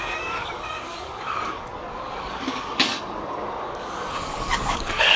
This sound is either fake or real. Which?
fake